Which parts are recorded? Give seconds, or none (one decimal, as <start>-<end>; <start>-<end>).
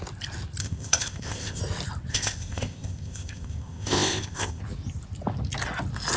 0.0-0.6; 1.6-2.1; 4.6-6.2